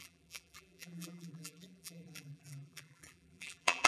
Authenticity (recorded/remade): remade